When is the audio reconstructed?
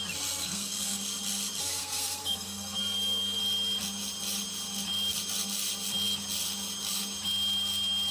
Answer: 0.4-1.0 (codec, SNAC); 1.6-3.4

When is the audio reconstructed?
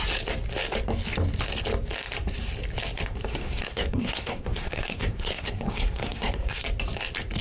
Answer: 3.3-6.6 (codec, SNAC)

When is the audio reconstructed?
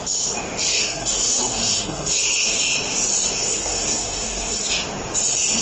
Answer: 0.7-2.6 (codec, SNAC); 3.5-4.7